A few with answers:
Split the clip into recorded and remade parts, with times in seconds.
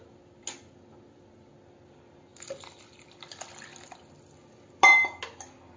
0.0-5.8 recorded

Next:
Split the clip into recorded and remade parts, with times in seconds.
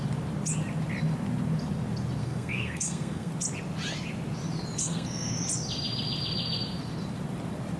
0.0-2.2 recorded; 2.2-3.3 remade; 3.3-4.8 recorded; 4.8-5.3 remade; 5.3-7.8 recorded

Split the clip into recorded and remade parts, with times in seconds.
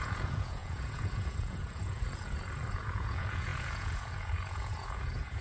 0.0-5.4 remade